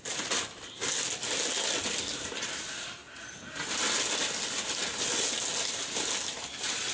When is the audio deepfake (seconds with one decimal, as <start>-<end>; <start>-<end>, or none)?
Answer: none